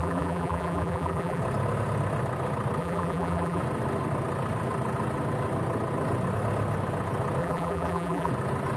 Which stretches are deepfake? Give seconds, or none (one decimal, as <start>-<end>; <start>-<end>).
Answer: 0.0-1.4; 2.8-3.6; 7.4-8.3